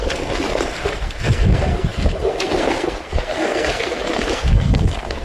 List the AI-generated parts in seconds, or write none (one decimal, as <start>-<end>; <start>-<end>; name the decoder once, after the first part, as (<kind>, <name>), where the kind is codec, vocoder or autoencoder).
0.0-5.2 (codec, SNAC)